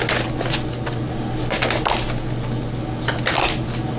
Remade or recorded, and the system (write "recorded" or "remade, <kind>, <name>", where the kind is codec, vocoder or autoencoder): recorded